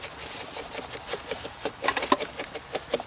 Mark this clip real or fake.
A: real